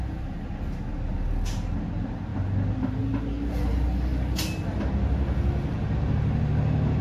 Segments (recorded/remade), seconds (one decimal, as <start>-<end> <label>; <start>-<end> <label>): 0.0-7.0 recorded